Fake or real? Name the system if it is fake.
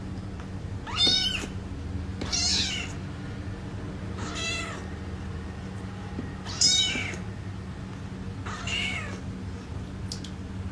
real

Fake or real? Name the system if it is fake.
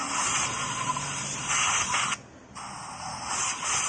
real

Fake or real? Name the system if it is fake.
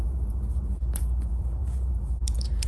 fake, vocoder, BigVGAN v2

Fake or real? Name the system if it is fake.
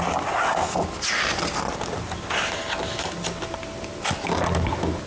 real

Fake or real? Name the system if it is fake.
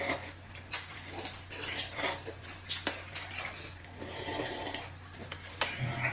real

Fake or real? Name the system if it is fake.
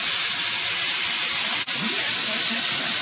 fake, vocoder, BigVGAN v2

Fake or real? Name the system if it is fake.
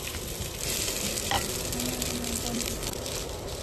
fake, vocoder, BigVGAN v2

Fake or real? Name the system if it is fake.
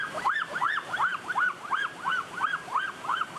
fake, vocoder, BigVGAN v2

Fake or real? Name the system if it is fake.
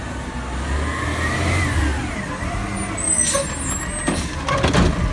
real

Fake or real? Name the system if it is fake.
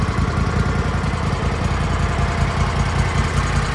fake, vocoder, BigVGAN v2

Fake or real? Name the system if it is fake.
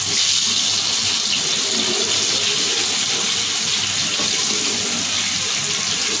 real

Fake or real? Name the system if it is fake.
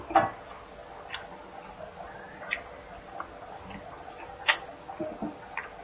real